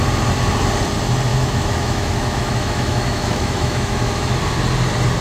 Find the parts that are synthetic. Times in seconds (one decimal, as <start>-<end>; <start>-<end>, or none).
1.3-4.4